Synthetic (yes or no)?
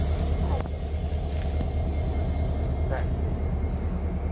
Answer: no